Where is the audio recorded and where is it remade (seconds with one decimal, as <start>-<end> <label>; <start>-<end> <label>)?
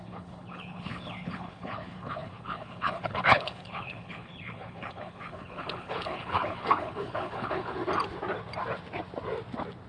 0.0-7.8 remade; 7.8-9.9 recorded